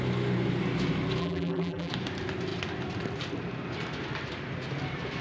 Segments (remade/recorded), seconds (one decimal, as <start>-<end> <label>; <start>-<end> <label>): 0.0-1.2 recorded; 1.2-1.9 remade; 1.9-5.2 recorded